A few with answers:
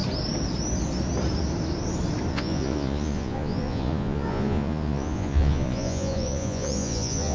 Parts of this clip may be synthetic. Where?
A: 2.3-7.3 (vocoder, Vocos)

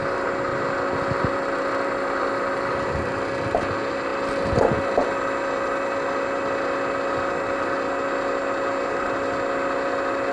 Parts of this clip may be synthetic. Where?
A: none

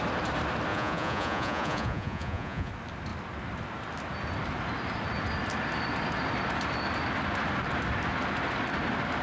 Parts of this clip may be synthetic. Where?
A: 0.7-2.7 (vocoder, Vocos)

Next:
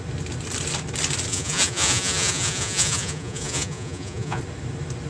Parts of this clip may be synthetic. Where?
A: 1.3-4.4 (vocoder, Vocos)